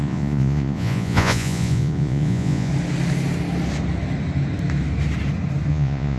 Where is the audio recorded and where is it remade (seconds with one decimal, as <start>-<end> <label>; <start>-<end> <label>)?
0.0-2.7 remade; 2.7-5.7 recorded; 5.7-6.2 remade